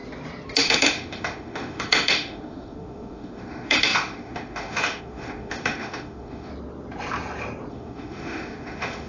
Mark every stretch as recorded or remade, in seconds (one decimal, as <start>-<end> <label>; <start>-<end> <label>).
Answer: 0.0-0.6 recorded; 0.6-6.5 remade; 6.5-7.7 recorded; 7.7-9.1 remade